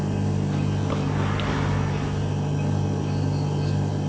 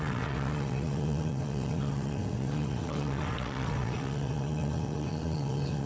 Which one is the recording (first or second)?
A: first